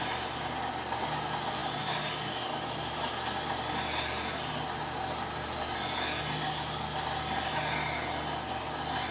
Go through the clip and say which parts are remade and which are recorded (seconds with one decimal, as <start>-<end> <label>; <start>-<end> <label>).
0.0-1.6 recorded; 1.6-2.1 remade; 2.1-9.1 recorded